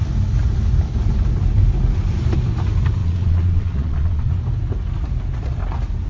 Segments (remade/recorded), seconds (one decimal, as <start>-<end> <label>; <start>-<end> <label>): 0.0-3.0 recorded; 3.0-4.3 remade; 4.3-6.1 recorded